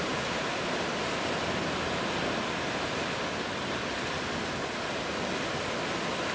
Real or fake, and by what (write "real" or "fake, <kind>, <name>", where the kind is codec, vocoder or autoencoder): real